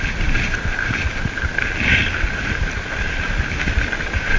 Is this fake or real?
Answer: real